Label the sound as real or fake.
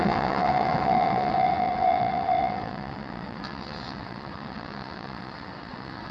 fake